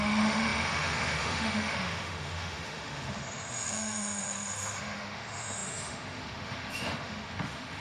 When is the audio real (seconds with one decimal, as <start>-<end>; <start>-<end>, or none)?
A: none